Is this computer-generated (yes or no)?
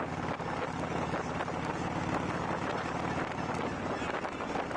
no